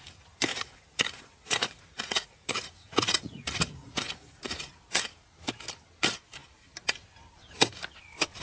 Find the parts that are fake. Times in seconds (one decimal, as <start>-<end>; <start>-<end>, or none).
0.5-4.7